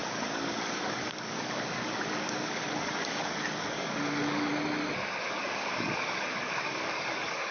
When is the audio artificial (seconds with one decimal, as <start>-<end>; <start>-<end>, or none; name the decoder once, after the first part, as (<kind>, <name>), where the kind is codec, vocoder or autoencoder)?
0.0-4.5 (codec, DAC); 5.2-7.5